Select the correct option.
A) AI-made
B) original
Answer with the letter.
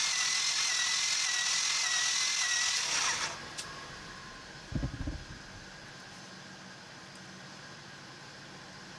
B